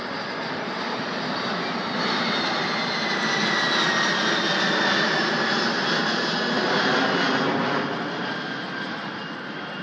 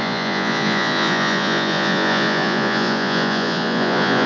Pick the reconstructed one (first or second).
second